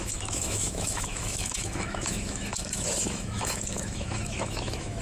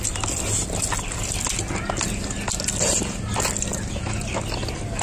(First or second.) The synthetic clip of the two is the first